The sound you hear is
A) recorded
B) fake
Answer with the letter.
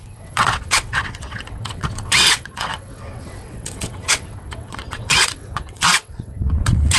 B